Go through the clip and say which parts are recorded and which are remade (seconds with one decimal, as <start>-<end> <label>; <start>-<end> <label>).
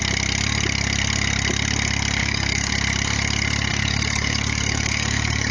0.0-2.2 recorded; 2.2-2.7 remade; 2.7-3.7 recorded; 3.7-5.5 remade